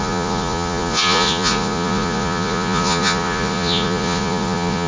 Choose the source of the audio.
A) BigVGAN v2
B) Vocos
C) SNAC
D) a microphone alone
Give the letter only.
B